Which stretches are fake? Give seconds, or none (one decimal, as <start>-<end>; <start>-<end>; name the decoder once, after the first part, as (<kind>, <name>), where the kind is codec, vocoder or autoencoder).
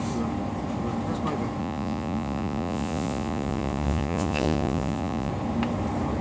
1.6-5.3 (vocoder, Vocos)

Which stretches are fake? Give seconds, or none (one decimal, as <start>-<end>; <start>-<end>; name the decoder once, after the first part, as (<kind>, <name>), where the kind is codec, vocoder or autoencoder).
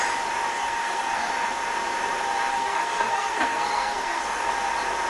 0.5-1.3 (codec, SNAC); 2.5-4.5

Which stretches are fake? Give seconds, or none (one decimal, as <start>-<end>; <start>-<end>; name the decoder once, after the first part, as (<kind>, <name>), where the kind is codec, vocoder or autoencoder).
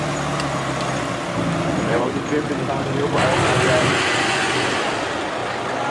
1.7-2.2 (vocoder, Vocos); 3.8-4.5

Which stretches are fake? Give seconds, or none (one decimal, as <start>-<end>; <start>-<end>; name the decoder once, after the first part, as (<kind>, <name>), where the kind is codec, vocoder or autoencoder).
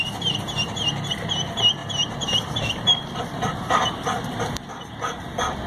1.8-4.7 (vocoder, BigVGAN v2)